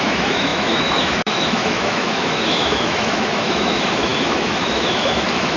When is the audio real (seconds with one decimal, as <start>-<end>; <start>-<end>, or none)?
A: none